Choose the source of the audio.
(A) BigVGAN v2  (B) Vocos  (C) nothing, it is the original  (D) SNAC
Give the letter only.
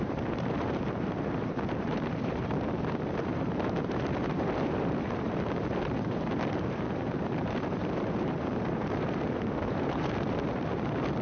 A